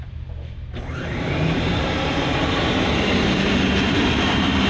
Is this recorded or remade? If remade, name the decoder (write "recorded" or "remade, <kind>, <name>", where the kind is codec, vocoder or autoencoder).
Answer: remade, vocoder, BigVGAN v2